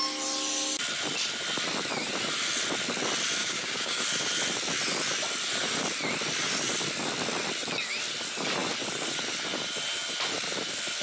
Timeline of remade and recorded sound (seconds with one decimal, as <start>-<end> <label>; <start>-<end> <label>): 0.0-3.4 recorded; 3.4-4.0 remade; 4.0-11.0 recorded